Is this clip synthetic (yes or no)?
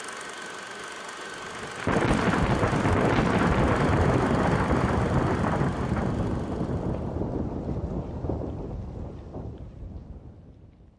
no